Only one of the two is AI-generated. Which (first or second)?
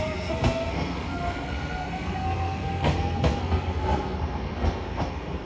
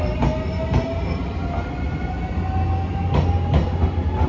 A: first